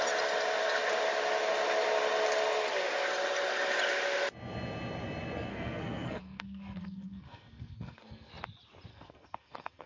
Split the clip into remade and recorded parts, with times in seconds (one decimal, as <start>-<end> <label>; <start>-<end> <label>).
0.0-5.5 recorded; 5.5-8.3 remade; 8.3-8.9 recorded; 8.9-9.9 remade